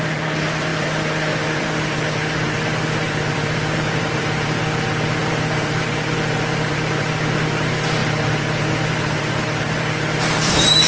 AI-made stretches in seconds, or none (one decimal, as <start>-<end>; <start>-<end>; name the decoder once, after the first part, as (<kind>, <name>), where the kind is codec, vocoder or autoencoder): 0.0-4.6 (vocoder, BigVGAN v2); 5.2-10.9